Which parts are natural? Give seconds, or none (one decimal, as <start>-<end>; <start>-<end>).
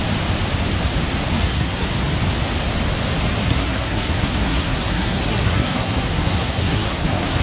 0.0-1.3; 1.9-3.4